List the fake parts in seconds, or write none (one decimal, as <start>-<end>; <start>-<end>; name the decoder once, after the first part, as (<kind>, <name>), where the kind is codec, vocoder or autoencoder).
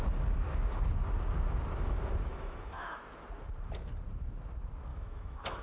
2.3-3.0 (autoencoder, DAC-VAE); 4.9-5.6